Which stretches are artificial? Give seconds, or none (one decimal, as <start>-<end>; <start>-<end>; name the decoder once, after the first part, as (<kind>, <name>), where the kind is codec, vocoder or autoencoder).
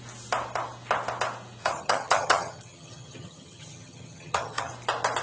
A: 1.6-4.7 (vocoder, HiFi-GAN)